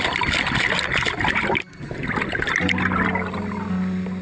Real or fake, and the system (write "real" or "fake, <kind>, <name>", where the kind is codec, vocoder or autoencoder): real